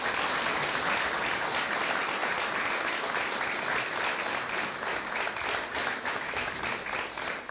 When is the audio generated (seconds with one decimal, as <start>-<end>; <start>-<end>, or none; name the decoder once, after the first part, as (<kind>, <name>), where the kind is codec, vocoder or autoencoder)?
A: 5.8-6.6 (autoencoder, DAC-VAE)